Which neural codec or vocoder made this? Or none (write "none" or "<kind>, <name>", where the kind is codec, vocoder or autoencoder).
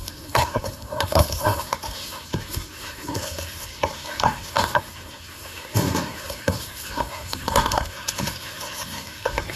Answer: codec, SNAC